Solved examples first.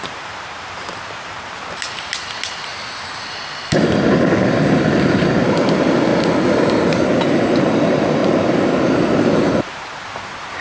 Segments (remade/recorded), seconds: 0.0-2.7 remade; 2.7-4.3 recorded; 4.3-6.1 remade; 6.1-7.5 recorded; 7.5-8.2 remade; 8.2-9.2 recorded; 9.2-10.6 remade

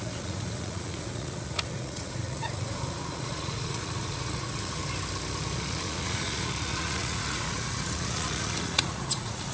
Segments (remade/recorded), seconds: 0.0-4.8 remade; 4.8-5.7 recorded; 5.7-9.5 remade

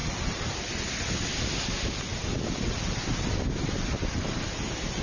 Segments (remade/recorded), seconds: 0.0-5.0 recorded

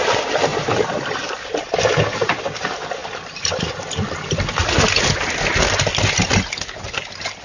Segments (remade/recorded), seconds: 0.0-0.5 recorded; 0.5-1.9 remade; 1.9-7.4 recorded